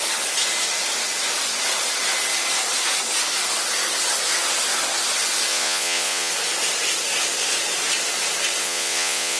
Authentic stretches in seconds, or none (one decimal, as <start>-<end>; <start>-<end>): 0.0-5.5; 6.3-8.6